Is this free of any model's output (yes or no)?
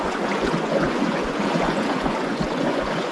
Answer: no